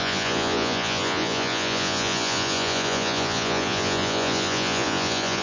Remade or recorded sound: remade